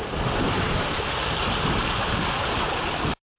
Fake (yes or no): no